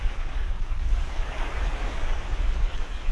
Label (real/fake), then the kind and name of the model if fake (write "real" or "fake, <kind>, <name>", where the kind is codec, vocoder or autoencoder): fake, codec, DAC